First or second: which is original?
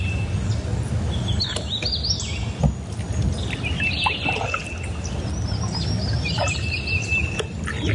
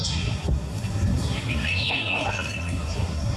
first